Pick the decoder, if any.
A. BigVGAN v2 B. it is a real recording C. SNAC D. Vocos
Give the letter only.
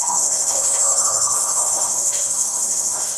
C